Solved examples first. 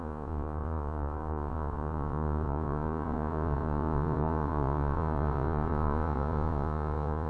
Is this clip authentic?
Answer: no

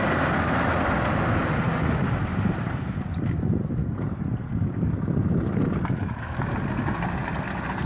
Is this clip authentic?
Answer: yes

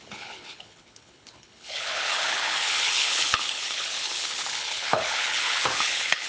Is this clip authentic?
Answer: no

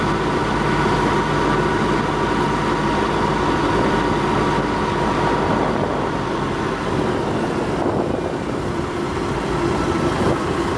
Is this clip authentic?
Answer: yes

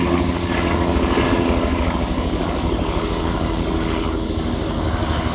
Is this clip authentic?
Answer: no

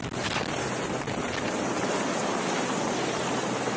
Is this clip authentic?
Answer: yes